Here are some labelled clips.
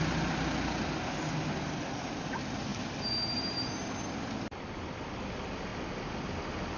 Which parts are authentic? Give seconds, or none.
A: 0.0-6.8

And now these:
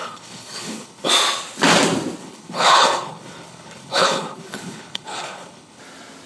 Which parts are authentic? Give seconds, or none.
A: 1.1-2.2; 5.8-6.3

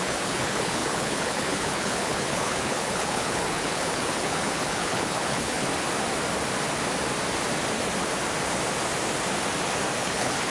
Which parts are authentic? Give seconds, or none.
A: 5.7-10.0

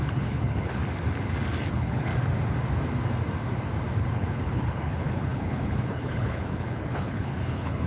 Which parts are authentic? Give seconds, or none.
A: 0.8-1.7; 2.1-4.0

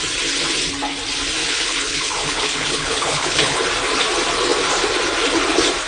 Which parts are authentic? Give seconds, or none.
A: 0.0-1.4; 3.6-5.9

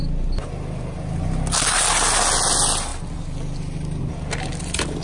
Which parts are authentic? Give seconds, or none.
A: 0.0-5.0